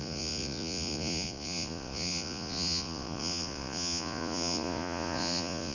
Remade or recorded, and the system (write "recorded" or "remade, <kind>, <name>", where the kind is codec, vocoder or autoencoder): remade, vocoder, Vocos